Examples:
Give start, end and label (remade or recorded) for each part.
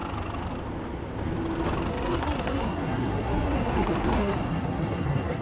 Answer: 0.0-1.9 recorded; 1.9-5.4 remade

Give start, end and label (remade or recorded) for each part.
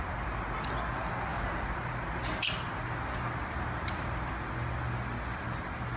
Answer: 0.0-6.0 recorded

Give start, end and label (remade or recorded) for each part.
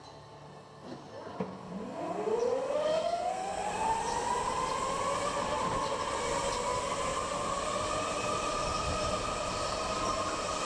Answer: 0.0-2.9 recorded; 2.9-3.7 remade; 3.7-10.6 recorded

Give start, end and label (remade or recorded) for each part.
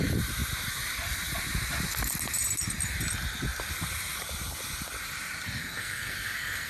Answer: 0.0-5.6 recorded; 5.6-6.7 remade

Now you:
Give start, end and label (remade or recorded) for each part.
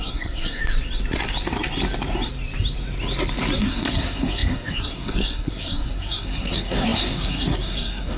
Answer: 0.0-0.6 remade; 0.6-3.6 recorded; 3.6-8.2 remade